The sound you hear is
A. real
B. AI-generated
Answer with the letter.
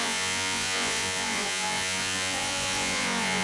B